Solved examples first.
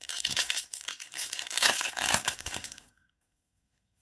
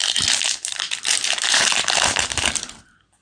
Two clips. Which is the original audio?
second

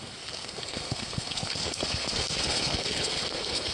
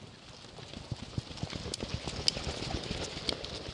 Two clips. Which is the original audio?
second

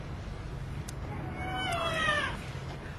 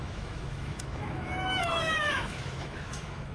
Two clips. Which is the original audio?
first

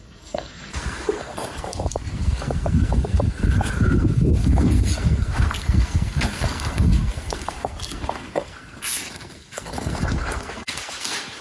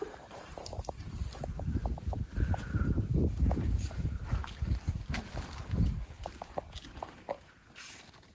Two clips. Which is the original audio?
second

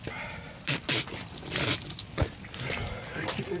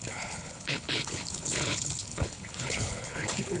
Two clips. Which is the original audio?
first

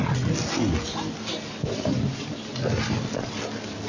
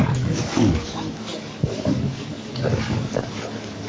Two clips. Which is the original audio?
first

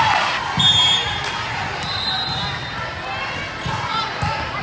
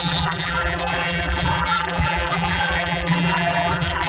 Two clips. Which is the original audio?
first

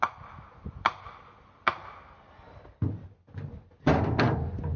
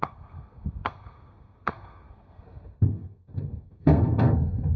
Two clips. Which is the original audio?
first